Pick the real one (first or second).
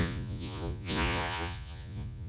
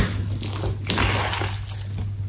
second